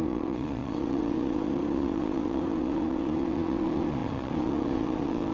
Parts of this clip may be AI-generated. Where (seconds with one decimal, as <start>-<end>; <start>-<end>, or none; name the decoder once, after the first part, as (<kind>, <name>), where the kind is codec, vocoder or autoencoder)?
0.0-5.3 (vocoder, Vocos)